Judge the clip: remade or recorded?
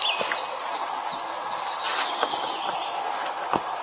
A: recorded